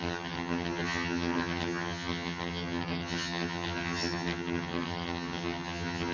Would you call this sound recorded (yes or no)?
no